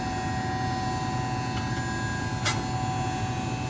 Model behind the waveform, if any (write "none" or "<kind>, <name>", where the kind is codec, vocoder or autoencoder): none